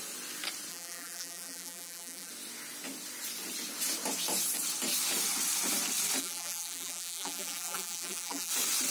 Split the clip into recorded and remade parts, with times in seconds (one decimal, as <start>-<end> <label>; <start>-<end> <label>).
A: 0.0-0.7 recorded; 0.7-2.3 remade; 2.3-6.2 recorded; 6.2-8.5 remade; 8.5-8.9 recorded